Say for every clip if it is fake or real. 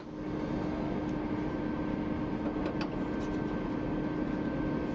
real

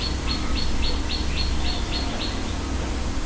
real